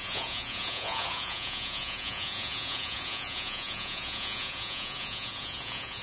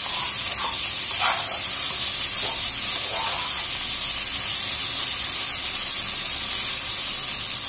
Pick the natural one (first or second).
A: second